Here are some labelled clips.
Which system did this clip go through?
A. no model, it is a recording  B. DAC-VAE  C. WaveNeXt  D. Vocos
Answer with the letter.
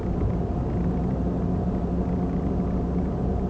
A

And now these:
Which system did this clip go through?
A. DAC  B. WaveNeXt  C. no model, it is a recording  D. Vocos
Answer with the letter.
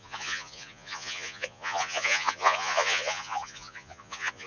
D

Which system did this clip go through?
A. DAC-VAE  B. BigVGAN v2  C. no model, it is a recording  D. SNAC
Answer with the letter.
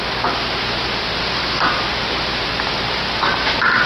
C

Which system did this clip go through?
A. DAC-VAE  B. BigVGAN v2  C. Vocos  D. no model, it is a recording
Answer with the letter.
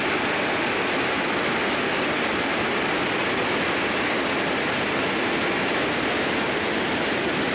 D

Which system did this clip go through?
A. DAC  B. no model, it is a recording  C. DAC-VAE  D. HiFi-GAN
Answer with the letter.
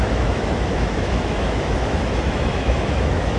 C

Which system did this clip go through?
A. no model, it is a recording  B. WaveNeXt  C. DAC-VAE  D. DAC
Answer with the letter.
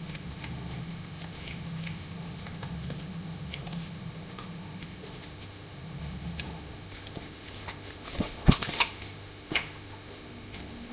C